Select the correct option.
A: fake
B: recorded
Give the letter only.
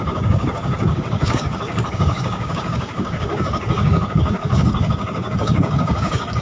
A